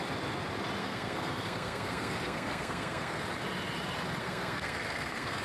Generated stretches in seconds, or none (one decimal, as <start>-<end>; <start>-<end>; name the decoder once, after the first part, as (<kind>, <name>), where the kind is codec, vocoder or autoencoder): 0.8-3.2 (codec, SNAC); 4.2-5.4